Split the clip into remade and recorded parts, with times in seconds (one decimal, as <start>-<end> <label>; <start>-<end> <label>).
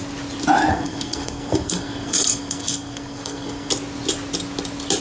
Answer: 0.0-0.7 recorded; 0.7-3.7 remade; 3.7-5.0 recorded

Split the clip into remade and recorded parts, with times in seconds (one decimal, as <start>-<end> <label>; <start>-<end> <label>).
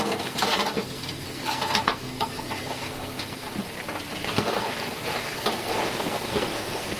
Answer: 0.0-3.5 remade; 3.5-4.2 recorded; 4.2-7.0 remade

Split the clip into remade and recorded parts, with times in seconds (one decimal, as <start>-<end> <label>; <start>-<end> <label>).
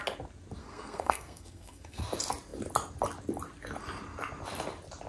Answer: 0.0-0.6 recorded; 0.6-2.0 remade; 2.0-5.1 recorded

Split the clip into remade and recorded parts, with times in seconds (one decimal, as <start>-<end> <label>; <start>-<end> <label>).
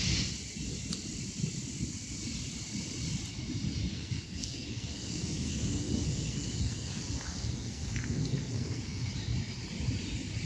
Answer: 0.0-3.9 recorded; 3.9-9.1 remade; 9.1-10.5 recorded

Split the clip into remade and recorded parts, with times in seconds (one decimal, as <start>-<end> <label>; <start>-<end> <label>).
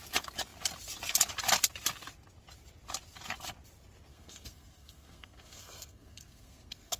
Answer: 0.0-4.1 recorded; 4.1-7.0 remade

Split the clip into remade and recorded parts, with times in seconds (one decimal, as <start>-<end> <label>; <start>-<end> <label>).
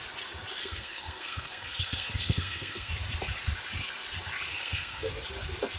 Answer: 0.0-0.6 recorded; 0.6-2.9 remade; 2.9-4.5 recorded; 4.5-5.1 remade; 5.1-5.8 recorded